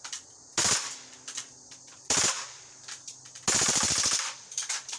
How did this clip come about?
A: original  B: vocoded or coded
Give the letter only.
A